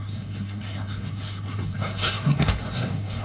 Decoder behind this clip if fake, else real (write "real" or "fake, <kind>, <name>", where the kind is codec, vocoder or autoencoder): fake, codec, SNAC